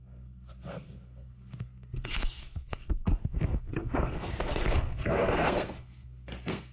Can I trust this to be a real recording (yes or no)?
no